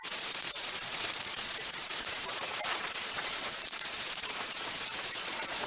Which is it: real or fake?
fake